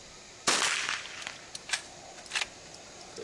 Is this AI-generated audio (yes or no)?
no